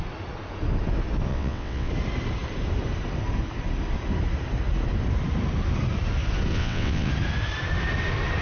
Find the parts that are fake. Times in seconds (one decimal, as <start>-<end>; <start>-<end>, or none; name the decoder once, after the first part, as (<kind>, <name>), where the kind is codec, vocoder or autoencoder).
1.3-1.9 (vocoder, WaveNeXt); 6.5-7.1